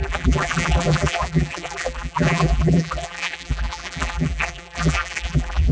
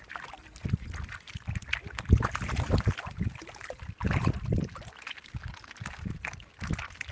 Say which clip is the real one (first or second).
second